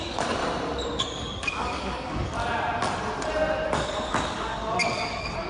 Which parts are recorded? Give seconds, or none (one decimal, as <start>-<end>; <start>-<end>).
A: 0.4-1.0; 2.4-3.7